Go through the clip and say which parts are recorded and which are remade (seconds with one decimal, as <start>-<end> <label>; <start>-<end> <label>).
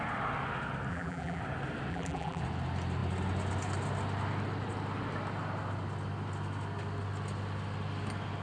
0.0-0.9 recorded; 0.9-1.4 remade; 1.4-1.9 recorded; 1.9-2.4 remade; 2.4-8.4 recorded